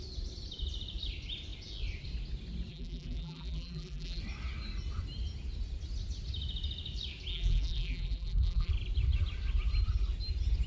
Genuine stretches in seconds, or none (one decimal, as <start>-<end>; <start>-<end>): 0.0-2.7; 4.2-7.3; 8.7-10.7